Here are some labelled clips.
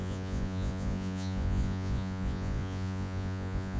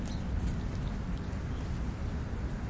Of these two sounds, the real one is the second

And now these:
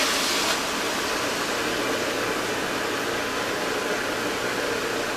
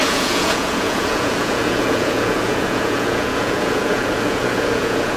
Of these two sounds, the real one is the first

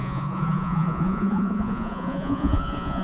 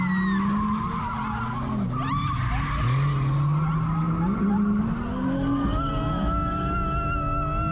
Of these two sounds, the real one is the second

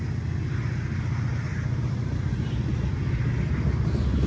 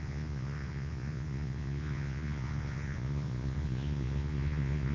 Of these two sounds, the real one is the first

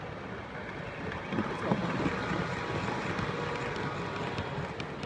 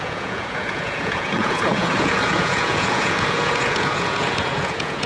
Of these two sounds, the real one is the first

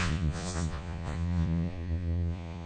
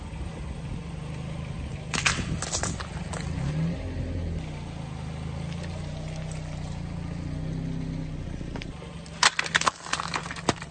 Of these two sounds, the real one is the second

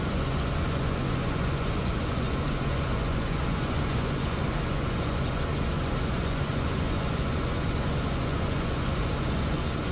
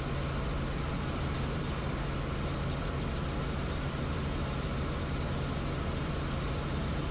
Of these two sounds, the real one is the second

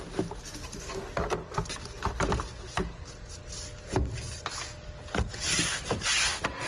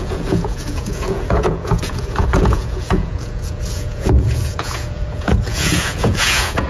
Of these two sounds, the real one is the first